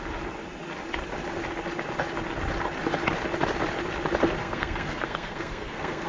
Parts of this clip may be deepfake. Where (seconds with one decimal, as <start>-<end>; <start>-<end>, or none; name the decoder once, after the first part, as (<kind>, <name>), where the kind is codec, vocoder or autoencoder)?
4.4-6.1 (codec, SNAC)

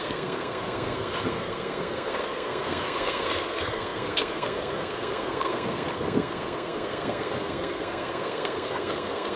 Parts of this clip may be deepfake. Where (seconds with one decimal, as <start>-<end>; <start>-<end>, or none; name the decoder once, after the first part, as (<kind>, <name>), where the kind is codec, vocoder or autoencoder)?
0.0-9.4 (codec, SNAC)

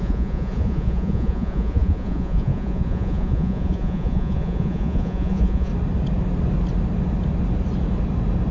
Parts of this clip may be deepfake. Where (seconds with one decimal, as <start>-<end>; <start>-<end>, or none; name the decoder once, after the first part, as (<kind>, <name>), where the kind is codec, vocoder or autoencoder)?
0.0-5.7 (vocoder, Vocos)